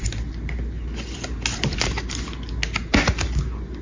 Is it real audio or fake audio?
real